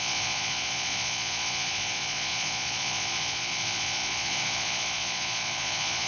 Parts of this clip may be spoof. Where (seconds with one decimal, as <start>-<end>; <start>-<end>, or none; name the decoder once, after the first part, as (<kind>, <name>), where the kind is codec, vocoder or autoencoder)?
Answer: 0.0-6.1 (vocoder, Vocos)